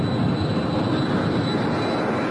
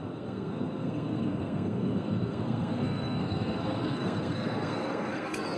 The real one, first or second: first